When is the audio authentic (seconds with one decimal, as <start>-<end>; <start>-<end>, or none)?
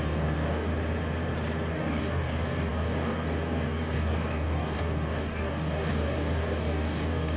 0.7-1.7